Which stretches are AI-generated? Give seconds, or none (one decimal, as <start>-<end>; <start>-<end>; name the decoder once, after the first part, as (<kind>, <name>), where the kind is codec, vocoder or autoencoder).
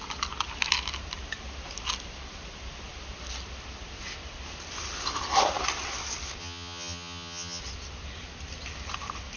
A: 6.4-7.6 (vocoder, HiFi-GAN)